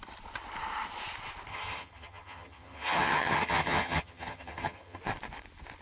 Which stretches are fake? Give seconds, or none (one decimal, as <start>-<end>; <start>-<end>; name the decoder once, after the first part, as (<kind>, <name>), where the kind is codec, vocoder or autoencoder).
1.5-5.0 (vocoder, HiFi-GAN)